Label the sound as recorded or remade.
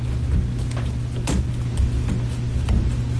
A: recorded